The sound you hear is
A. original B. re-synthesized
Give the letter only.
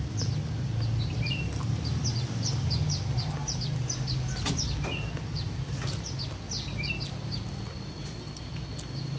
A